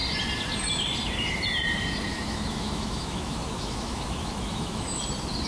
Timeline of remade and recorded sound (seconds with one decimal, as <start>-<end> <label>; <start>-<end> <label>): 0.0-2.1 recorded; 2.1-5.0 remade; 5.0-5.5 recorded

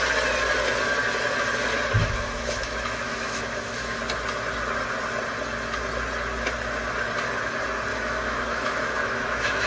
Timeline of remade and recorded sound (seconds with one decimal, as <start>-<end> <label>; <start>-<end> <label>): 0.0-2.0 recorded; 2.0-4.0 remade; 4.0-7.9 recorded; 7.9-9.7 remade

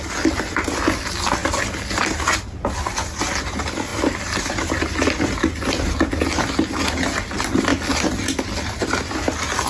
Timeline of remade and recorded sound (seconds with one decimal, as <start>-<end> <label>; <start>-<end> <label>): 0.0-9.7 recorded

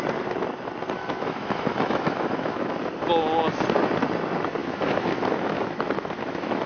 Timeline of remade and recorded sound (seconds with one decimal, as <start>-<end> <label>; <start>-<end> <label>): 0.0-1.0 recorded; 1.0-2.7 remade; 2.7-4.6 recorded; 4.6-6.7 remade

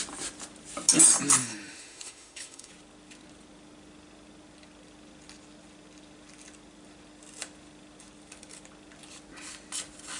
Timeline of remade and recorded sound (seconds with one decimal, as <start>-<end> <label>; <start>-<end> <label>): 0.0-1.4 recorded; 1.4-2.7 remade; 2.7-10.2 recorded